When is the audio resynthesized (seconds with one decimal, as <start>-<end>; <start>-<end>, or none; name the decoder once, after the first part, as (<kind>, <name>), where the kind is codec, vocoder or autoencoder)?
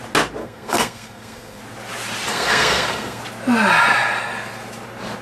0.4-1.6 (codec, SNAC); 2.3-3.2